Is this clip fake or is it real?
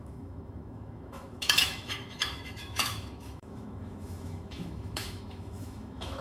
fake